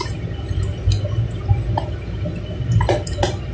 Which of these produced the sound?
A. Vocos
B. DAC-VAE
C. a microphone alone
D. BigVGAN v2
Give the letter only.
C